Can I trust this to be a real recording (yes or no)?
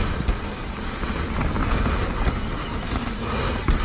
yes